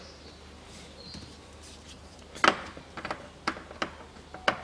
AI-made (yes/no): no